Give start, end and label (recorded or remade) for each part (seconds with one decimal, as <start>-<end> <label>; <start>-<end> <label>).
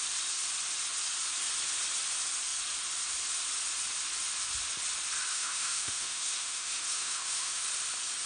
0.0-5.3 recorded; 5.3-7.6 remade; 7.6-8.3 recorded